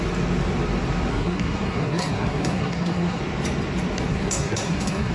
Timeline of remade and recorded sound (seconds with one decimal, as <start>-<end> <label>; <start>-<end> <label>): 0.0-1.1 recorded; 1.1-3.2 remade; 3.2-4.1 recorded; 4.1-5.1 remade

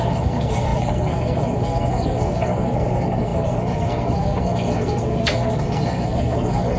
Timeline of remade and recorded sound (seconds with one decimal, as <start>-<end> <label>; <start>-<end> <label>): 0.0-6.8 remade